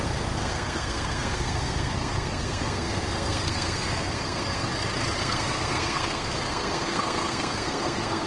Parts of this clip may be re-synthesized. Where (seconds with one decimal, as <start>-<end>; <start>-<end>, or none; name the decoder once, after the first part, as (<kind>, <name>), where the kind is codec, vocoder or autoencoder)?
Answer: 0.0-4.7 (codec, SNAC); 5.2-8.3